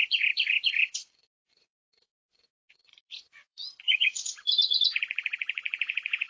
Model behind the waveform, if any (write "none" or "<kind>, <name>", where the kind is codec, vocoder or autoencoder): vocoder, Vocos